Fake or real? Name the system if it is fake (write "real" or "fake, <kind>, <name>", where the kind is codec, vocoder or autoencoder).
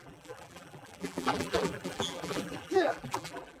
fake, vocoder, BigVGAN v2